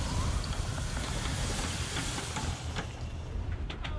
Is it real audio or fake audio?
real